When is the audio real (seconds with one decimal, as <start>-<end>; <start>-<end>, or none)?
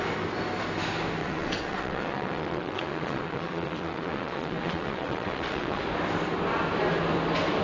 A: 0.0-1.2; 5.8-7.6